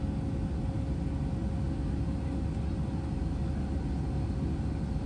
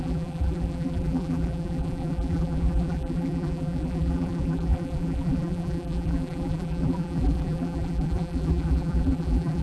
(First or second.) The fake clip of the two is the second